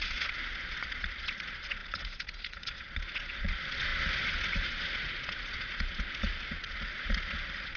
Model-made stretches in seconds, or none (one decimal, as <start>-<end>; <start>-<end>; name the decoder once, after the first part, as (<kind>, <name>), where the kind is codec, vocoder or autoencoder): 0.0-7.8 (vocoder, Vocos)